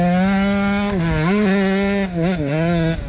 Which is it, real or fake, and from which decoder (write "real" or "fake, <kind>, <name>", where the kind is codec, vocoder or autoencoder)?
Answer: real